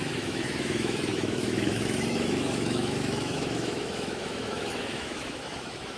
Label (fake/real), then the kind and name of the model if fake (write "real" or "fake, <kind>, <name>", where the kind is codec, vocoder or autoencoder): fake, autoencoder, DAC-VAE